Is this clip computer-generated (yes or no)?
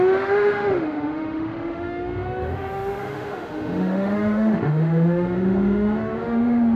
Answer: yes